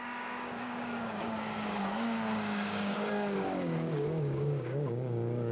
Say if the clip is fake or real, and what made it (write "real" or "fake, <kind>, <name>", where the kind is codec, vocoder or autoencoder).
fake, codec, DAC